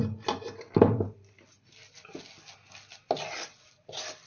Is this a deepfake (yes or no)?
no